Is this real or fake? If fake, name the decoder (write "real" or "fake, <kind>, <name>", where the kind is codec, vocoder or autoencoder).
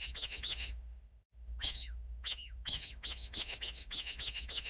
fake, autoencoder, DAC-VAE